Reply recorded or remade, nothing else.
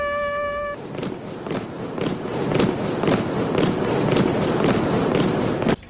recorded